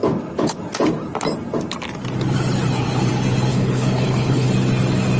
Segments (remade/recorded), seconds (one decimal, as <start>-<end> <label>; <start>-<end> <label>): 0.0-3.5 recorded; 3.5-4.5 remade; 4.5-5.2 recorded

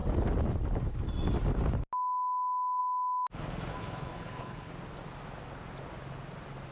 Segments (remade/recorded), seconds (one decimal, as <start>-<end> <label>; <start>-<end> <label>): 0.0-3.7 recorded; 3.7-4.7 remade; 4.7-6.7 recorded

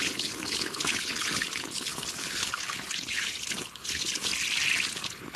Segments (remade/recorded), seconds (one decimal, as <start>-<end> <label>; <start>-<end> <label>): 0.0-4.3 remade; 4.3-4.9 recorded; 4.9-5.4 remade

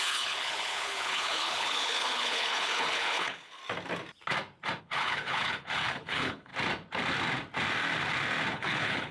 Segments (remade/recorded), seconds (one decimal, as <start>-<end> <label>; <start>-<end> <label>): 0.0-3.6 remade; 3.6-4.8 recorded; 4.8-6.5 remade; 6.5-8.5 recorded; 8.5-9.1 remade

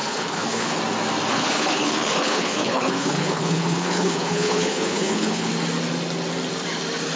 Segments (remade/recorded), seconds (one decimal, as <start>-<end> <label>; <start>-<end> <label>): 0.0-0.8 remade; 0.8-1.3 recorded; 1.3-5.5 remade; 5.5-7.2 recorded

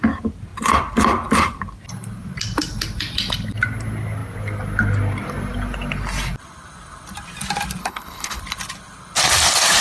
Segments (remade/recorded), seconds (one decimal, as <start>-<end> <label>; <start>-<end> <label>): 0.0-7.8 recorded; 7.8-8.4 remade; 8.4-9.8 recorded